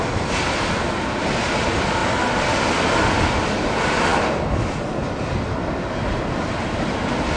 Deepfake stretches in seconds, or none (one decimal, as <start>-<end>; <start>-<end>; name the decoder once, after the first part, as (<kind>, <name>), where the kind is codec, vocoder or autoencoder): none